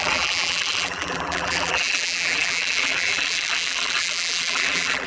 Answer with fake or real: fake